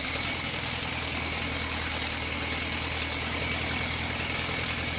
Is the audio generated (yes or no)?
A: no